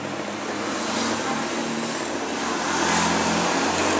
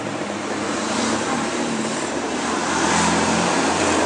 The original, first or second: first